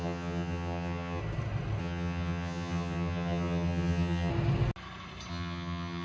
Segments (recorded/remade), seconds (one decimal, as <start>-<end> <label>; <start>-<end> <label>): 0.0-1.2 remade; 1.2-1.8 recorded; 1.8-4.3 remade; 4.3-5.3 recorded; 5.3-6.0 remade